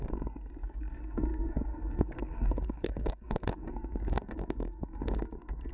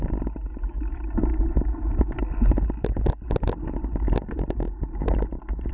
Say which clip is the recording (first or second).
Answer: second